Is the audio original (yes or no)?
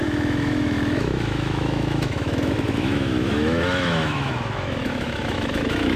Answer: no